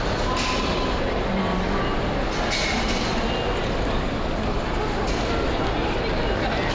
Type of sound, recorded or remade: recorded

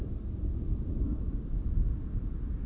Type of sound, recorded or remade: recorded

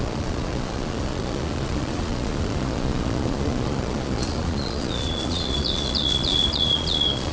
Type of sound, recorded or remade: remade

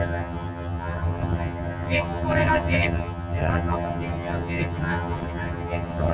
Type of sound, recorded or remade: remade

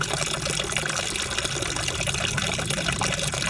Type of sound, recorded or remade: recorded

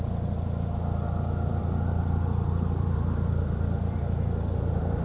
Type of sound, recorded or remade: remade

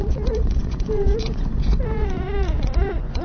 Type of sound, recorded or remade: remade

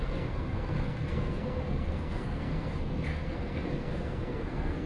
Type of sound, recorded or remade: remade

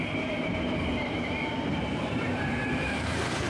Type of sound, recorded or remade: remade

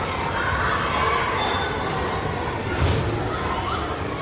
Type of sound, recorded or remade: recorded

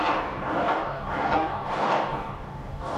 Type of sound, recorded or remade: remade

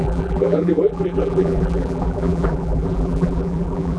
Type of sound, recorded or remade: remade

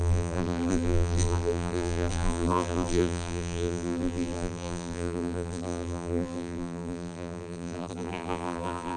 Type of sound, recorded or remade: remade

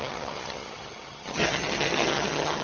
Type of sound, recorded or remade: remade